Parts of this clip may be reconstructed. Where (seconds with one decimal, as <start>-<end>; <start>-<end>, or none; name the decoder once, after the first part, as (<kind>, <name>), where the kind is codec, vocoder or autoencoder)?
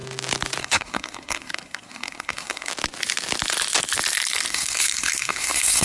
0.6-2.7 (codec, SNAC); 4.5-5.8